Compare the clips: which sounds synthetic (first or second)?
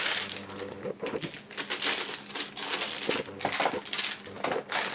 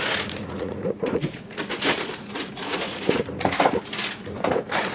second